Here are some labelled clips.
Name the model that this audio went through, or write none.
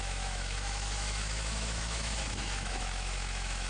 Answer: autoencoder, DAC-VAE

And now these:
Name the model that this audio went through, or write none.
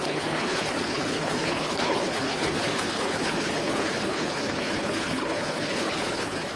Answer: codec, HILCodec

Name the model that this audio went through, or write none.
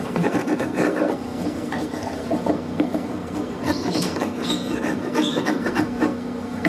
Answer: codec, SNAC